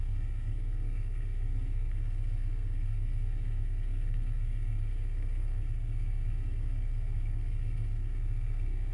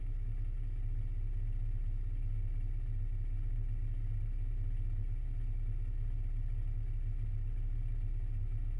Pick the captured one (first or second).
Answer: second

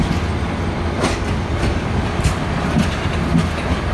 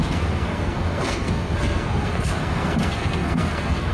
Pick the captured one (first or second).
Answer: first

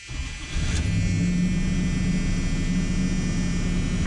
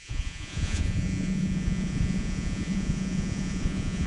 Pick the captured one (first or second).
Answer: first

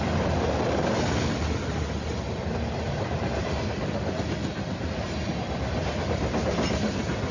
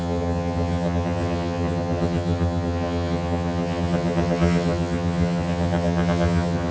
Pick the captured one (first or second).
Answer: first